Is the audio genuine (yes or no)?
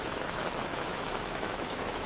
no